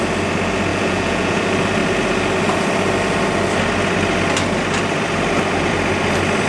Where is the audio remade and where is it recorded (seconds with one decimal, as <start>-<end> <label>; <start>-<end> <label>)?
0.0-0.7 recorded; 0.7-1.4 remade; 1.4-6.5 recorded